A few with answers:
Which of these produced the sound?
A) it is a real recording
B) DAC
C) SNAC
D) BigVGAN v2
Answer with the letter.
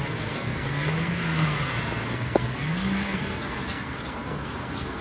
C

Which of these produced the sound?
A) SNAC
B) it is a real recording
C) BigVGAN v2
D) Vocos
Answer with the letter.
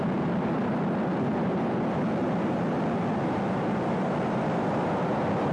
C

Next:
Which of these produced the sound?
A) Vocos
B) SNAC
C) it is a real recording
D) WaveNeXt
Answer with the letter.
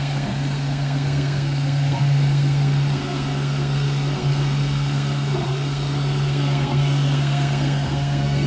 B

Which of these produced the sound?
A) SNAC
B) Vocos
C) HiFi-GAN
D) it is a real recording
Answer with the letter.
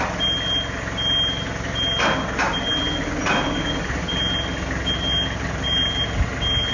D